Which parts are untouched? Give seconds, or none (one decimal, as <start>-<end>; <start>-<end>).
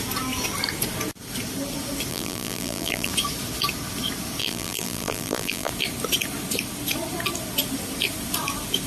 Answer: 0.0-2.1; 3.1-4.4; 5.7-8.9